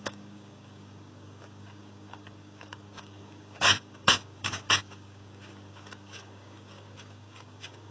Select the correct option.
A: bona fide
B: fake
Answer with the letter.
B